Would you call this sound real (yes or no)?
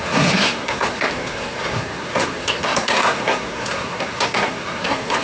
no